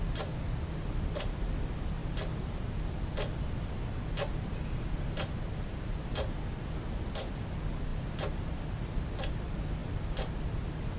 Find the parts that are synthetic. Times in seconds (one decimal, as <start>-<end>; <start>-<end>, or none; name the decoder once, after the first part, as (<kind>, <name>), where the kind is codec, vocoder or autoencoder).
none